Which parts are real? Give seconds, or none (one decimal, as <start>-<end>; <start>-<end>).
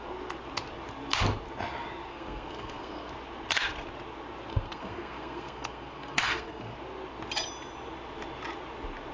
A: 0.0-2.1; 3.1-4.5; 6.7-9.1